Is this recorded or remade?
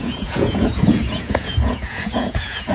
remade